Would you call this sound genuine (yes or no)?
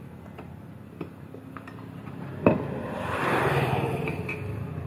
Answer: yes